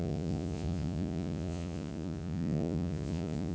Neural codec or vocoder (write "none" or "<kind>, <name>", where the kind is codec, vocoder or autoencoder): vocoder, Vocos